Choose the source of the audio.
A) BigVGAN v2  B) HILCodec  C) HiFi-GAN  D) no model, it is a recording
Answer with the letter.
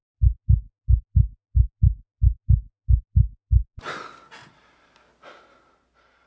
D